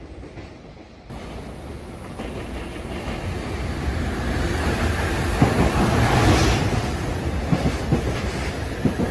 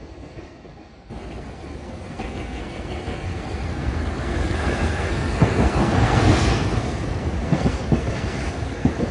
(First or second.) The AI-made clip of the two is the second